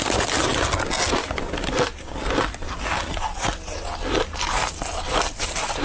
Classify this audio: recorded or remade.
recorded